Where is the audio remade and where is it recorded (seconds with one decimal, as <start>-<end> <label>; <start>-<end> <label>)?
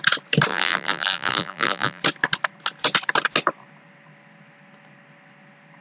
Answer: 0.0-0.5 recorded; 0.5-2.0 remade; 2.0-5.8 recorded